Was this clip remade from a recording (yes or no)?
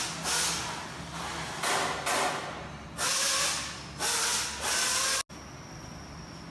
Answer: no